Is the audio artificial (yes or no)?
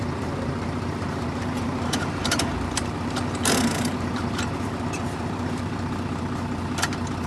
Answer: yes